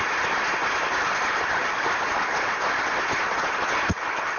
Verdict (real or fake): real